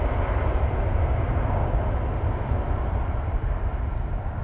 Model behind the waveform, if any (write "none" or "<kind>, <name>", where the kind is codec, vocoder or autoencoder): none